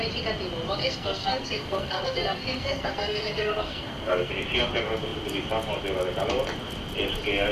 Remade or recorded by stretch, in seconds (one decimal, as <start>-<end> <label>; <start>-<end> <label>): 0.0-0.8 recorded; 0.8-4.3 remade; 4.3-7.5 recorded